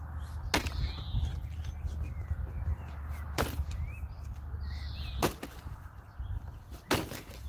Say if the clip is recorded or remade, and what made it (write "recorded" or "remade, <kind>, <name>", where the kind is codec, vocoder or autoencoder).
recorded